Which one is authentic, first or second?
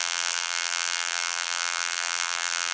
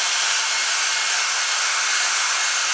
second